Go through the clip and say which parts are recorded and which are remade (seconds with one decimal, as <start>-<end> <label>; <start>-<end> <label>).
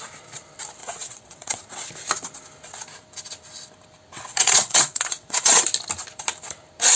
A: 0.0-0.8 recorded; 0.8-1.9 remade; 1.9-4.1 recorded; 4.1-5.6 remade; 5.6-7.0 recorded